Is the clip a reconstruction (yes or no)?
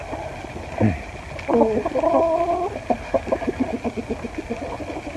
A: no